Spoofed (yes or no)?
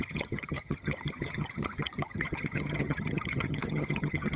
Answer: yes